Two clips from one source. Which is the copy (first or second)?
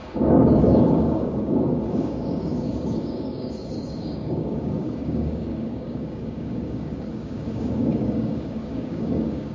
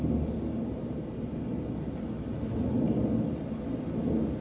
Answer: first